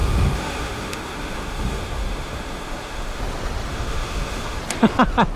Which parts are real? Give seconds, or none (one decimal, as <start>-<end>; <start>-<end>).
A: 3.2-3.7; 4.6-5.4